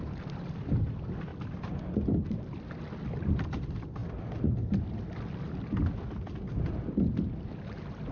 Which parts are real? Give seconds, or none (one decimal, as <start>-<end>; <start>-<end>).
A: 0.0-8.1